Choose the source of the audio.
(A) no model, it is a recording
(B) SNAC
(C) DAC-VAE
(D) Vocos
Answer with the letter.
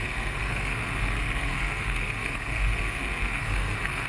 B